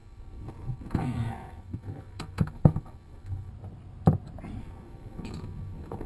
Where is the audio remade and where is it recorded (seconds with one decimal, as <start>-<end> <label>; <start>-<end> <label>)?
0.0-3.5 remade; 3.5-4.6 recorded; 4.6-6.1 remade

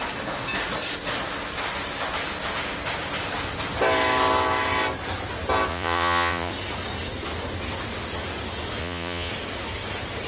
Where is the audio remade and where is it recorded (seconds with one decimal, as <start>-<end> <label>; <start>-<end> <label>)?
0.0-5.7 recorded; 5.7-6.5 remade; 6.5-8.8 recorded; 8.8-9.3 remade; 9.3-10.3 recorded

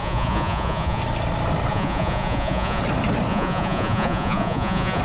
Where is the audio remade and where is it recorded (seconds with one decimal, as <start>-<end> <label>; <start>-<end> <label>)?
0.0-1.0 remade; 1.0-1.7 recorded; 1.7-2.8 remade; 2.8-3.3 recorded; 3.3-5.0 remade

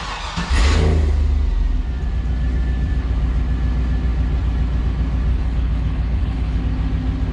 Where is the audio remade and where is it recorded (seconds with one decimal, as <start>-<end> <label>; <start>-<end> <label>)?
0.0-5.3 recorded; 5.3-6.6 remade; 6.6-7.3 recorded

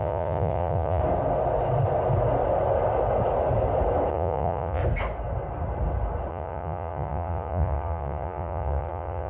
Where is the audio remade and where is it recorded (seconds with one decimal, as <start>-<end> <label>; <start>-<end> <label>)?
0.0-1.0 remade; 1.0-4.1 recorded; 4.1-4.8 remade; 4.8-6.3 recorded; 6.3-9.3 remade

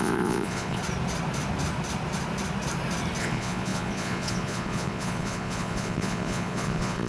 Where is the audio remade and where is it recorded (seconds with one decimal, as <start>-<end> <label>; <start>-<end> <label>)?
0.0-0.8 remade; 0.8-3.2 recorded; 3.2-7.1 remade

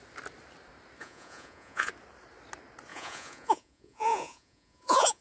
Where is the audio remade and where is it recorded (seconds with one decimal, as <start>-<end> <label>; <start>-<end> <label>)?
0.0-1.0 recorded; 1.0-1.9 remade; 1.9-2.9 recorded; 2.9-5.2 remade

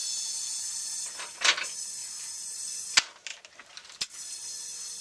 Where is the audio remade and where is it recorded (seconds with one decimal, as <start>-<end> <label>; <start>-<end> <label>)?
0.0-0.6 remade; 0.6-5.0 recorded